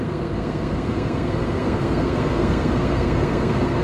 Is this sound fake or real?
fake